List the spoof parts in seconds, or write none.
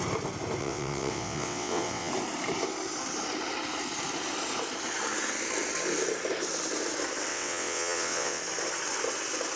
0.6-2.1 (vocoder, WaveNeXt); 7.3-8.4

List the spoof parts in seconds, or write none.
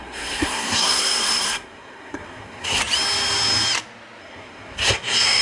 0.0-2.8 (codec, SNAC); 4.2-5.4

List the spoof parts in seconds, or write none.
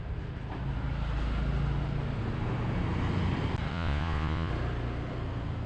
3.7-4.5 (vocoder, Vocos)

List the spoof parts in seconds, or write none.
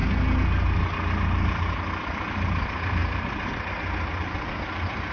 none